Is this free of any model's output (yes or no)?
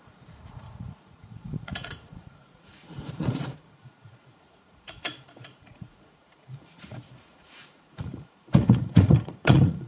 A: no